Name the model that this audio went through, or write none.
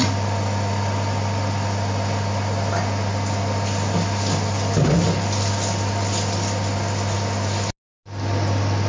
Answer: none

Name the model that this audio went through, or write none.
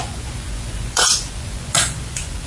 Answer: vocoder, Vocos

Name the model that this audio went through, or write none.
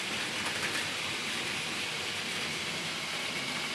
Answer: none